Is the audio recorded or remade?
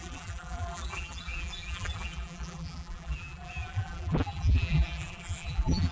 remade